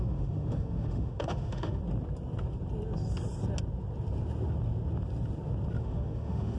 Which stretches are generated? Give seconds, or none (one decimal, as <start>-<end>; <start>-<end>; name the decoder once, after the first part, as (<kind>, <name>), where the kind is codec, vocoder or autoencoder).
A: 0.0-1.8 (autoencoder, DAC-VAE); 5.8-6.6